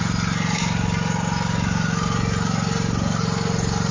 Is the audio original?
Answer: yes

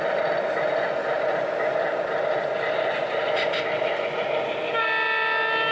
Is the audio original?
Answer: yes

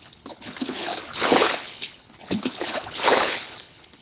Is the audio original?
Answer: no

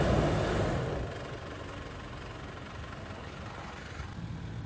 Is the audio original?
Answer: yes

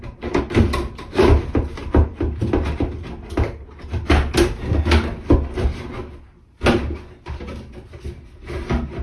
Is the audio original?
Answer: yes